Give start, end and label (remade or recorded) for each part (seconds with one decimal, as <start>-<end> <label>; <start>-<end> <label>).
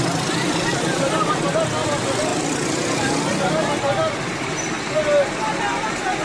0.0-0.7 recorded; 0.7-1.5 remade; 1.5-2.3 recorded; 2.3-4.8 remade; 4.8-6.2 recorded